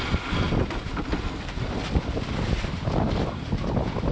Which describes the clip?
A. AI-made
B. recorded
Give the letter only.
B